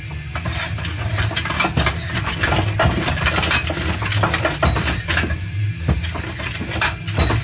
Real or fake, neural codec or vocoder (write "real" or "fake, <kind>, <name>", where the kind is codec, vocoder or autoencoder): real